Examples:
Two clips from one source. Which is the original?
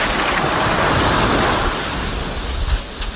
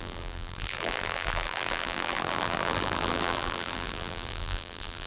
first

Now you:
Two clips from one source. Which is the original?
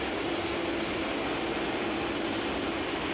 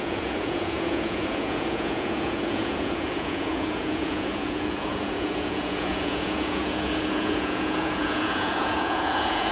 first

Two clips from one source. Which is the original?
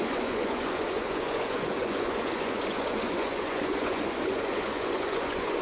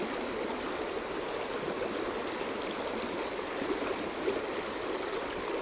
second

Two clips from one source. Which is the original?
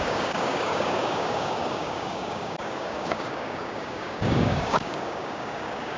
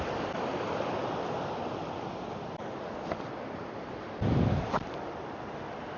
second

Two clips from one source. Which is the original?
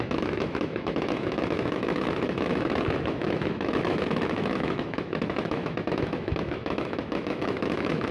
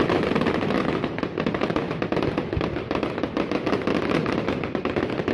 second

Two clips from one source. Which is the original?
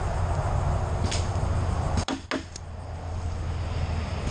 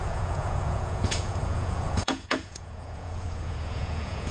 first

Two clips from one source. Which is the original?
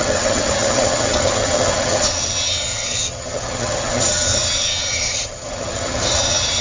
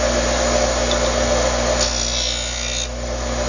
second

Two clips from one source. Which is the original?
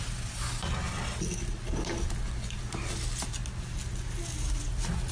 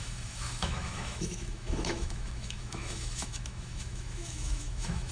first